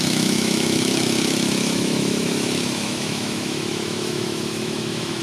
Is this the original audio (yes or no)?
no